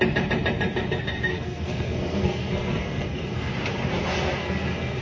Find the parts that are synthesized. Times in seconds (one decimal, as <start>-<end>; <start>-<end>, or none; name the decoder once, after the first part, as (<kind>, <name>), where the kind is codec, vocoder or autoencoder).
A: 1.3-3.5 (codec, SNAC); 4.4-5.0